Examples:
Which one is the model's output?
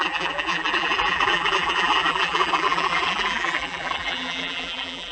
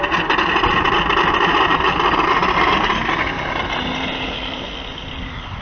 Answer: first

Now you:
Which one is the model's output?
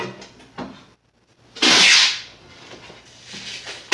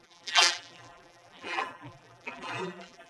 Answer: second